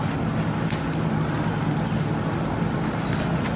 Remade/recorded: recorded